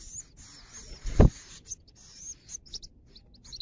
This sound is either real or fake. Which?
real